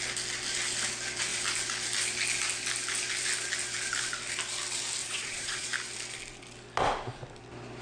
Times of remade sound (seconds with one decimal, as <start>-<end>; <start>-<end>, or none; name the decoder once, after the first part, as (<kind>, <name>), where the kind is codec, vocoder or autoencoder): 5.0-5.7 (vocoder, Vocos)